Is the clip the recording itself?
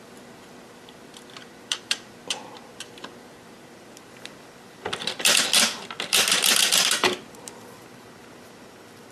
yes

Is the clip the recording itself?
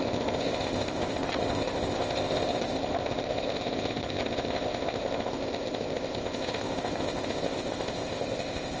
no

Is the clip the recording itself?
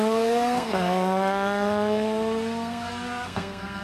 no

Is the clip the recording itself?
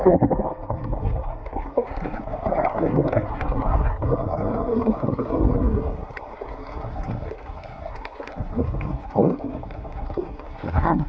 no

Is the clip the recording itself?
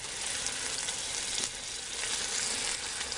yes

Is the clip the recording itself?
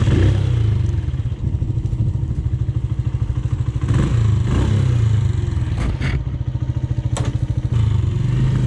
yes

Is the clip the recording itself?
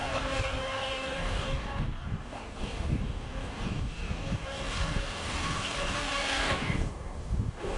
no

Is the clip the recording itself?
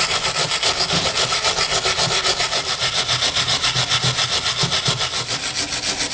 yes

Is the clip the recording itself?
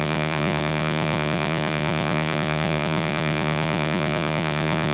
no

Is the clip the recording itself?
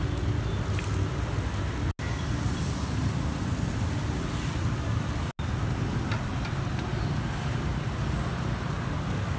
yes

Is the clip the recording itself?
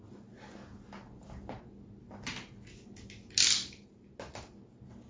yes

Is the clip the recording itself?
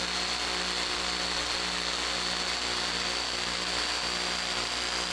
yes